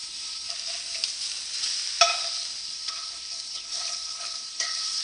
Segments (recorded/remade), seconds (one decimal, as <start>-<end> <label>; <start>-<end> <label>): 0.0-0.5 remade; 0.5-2.6 recorded; 2.6-5.0 remade